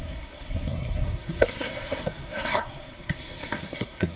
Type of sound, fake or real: fake